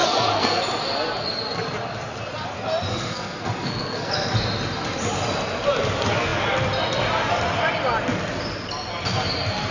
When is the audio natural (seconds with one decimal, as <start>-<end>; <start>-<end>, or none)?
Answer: 0.6-2.9; 4.1-9.7